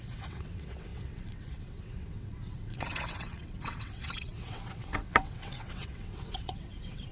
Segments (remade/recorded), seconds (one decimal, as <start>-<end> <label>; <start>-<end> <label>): 0.0-7.1 remade